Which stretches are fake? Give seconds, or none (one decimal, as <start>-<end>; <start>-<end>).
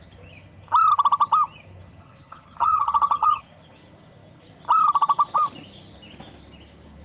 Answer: 2.0-3.4